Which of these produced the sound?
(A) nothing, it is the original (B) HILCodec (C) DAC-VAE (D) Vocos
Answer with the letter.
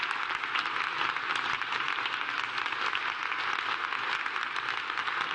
A